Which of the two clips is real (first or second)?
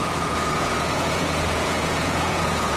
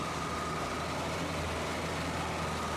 second